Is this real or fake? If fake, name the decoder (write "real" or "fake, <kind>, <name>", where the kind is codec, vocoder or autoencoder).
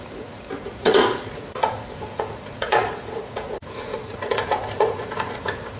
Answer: fake, vocoder, Vocos